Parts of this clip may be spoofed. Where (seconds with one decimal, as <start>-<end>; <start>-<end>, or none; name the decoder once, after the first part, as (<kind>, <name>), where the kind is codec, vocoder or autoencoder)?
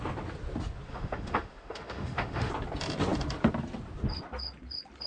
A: 0.9-2.5 (autoencoder, DAC-VAE)